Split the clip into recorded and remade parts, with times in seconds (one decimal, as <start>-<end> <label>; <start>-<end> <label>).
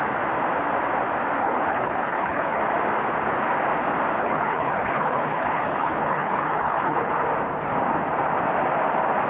0.0-1.4 recorded; 1.4-2.6 remade; 2.6-4.2 recorded; 4.2-7.1 remade; 7.1-9.3 recorded